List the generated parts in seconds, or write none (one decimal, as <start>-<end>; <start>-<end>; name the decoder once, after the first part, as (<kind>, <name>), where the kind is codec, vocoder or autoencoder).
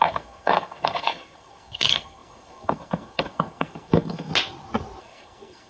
0.0-4.3 (codec, SNAC); 5.0-5.7